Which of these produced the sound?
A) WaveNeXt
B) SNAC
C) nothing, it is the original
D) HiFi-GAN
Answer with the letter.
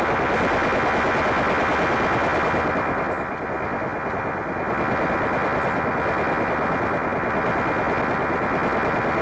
C